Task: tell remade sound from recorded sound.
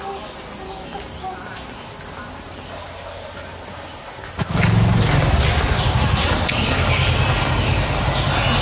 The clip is recorded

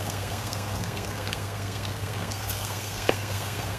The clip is remade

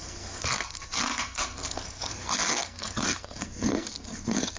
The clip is remade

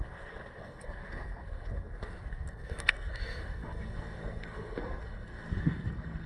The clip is remade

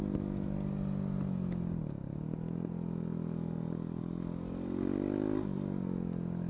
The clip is recorded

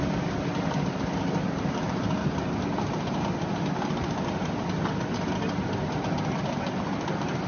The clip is recorded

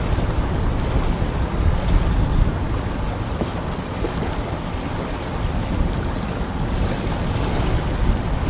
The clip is recorded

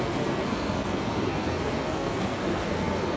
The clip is remade